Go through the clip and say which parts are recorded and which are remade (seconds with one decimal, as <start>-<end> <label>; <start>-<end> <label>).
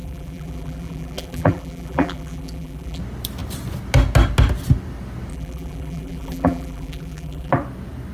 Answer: 0.0-3.0 remade; 3.0-5.3 recorded; 5.3-7.5 remade; 7.5-8.1 recorded